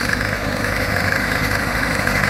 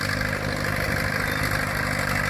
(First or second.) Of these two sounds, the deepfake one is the first